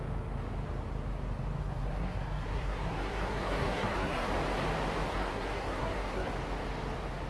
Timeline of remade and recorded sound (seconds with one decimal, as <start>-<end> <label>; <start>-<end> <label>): 0.0-1.6 recorded; 1.6-4.3 remade; 4.3-5.1 recorded; 5.1-6.3 remade; 6.3-7.3 recorded